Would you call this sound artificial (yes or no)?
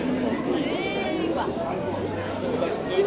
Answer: no